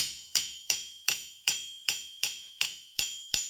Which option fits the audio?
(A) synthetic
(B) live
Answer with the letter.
A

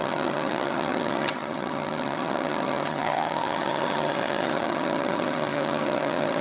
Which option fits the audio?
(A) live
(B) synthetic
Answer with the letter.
B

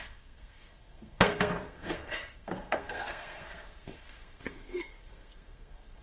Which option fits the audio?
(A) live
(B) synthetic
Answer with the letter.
B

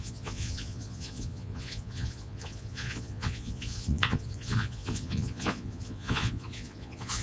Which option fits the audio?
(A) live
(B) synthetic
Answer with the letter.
B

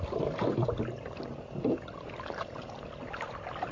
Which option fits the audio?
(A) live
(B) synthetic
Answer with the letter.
A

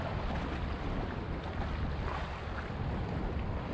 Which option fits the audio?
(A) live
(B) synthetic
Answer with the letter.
A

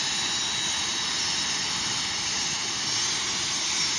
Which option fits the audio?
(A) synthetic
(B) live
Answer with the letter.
B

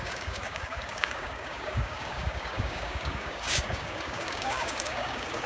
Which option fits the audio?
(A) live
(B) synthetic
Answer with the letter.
B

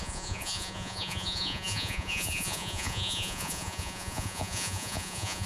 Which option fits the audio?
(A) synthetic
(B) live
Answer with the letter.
A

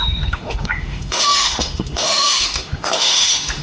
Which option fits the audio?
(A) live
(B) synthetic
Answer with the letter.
B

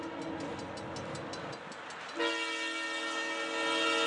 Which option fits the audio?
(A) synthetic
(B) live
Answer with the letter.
B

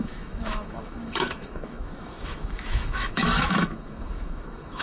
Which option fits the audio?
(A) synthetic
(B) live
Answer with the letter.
A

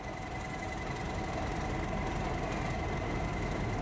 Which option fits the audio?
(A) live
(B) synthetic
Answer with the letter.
A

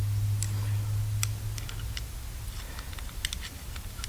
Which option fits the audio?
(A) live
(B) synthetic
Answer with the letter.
A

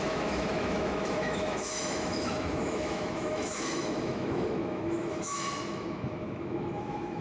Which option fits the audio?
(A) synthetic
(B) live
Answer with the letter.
A